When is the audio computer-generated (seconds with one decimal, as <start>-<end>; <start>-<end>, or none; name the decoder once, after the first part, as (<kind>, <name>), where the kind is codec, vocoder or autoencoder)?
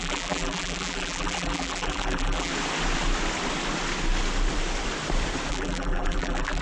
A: 0.0-2.5 (vocoder, BigVGAN v2); 5.5-6.6